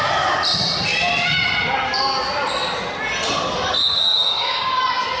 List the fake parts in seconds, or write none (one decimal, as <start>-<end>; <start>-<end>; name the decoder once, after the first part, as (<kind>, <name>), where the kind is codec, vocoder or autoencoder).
3.8-4.8 (codec, DAC)